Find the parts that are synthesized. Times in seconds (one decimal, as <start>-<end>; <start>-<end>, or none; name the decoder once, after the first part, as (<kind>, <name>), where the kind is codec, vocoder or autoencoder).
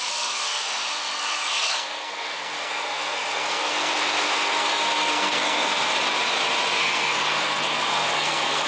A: 0.0-5.8 (codec, SNAC); 6.8-8.7